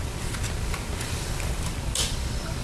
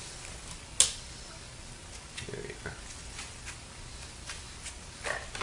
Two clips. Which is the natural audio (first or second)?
second